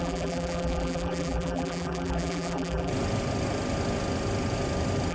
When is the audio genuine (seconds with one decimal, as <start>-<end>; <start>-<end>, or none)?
2.9-5.1